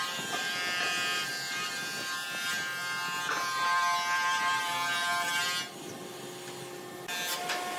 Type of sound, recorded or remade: recorded